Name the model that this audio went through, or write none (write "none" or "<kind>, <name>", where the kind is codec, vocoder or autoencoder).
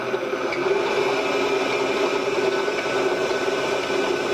none